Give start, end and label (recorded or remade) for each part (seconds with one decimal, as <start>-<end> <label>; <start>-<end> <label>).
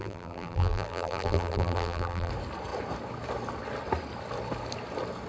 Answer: 0.0-2.3 remade; 2.3-5.3 recorded